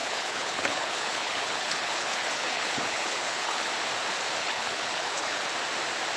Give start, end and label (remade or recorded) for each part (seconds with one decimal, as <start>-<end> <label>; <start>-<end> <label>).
0.0-3.7 remade; 3.7-4.4 recorded; 4.4-5.4 remade; 5.4-6.2 recorded